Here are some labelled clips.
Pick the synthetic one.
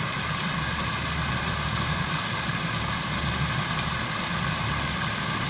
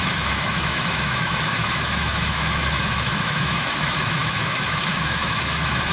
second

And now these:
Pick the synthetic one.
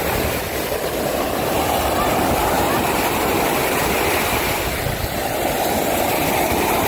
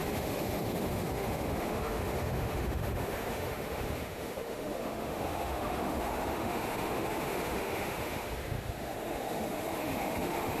second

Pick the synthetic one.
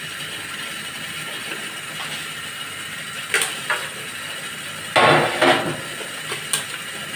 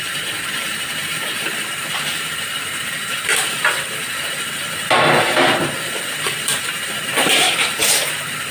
second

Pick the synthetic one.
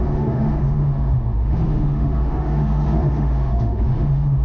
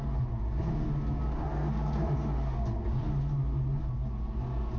first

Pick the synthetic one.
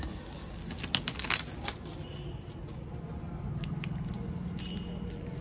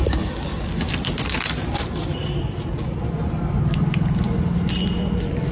second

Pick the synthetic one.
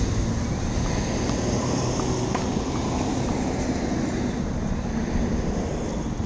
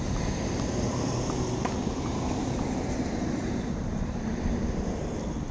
second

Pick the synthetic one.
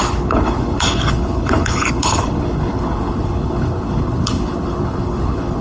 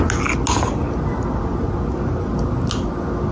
first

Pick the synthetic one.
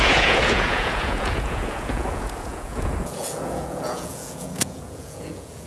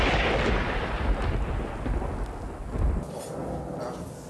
first